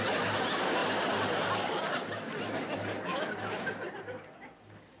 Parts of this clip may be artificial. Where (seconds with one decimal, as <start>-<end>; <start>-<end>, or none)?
none